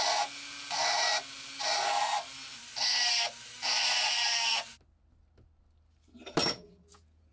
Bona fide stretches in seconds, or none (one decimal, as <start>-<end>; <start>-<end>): 0.0-6.4